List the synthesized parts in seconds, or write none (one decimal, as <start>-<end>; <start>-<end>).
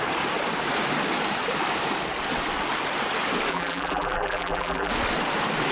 3.5-4.9